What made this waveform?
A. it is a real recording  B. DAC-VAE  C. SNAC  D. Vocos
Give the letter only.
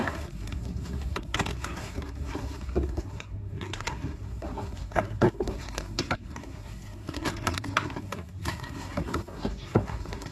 C